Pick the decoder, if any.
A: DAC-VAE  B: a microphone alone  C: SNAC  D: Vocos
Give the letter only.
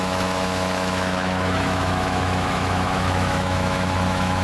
A